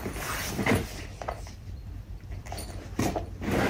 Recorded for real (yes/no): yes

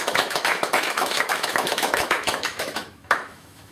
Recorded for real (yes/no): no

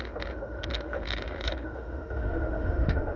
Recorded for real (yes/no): no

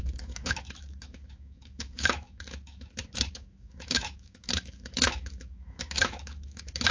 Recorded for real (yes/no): no